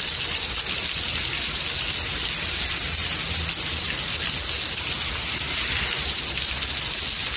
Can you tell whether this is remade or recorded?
recorded